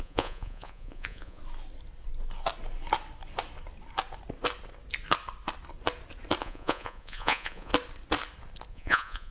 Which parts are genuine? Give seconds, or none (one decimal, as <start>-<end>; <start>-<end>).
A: 1.4-6.4; 7.7-8.7